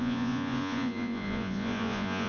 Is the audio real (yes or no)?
no